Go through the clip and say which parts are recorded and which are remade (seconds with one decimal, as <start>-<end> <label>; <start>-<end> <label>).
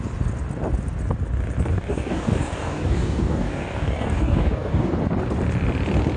0.0-1.7 recorded; 1.7-4.9 remade; 4.9-6.2 recorded